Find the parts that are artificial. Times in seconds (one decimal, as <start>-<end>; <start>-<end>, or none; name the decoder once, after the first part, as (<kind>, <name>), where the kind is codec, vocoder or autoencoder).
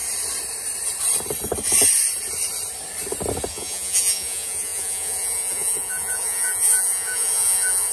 3.5-7.9 (vocoder, Vocos)